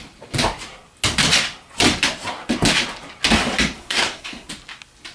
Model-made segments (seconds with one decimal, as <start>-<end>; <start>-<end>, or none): 3.8-4.5